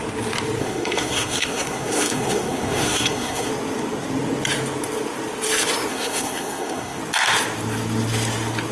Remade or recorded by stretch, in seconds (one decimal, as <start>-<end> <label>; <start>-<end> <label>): 0.0-0.6 recorded; 0.6-3.5 remade; 3.5-5.9 recorded; 5.9-7.0 remade; 7.0-8.7 recorded